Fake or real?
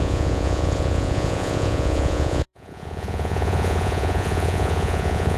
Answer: fake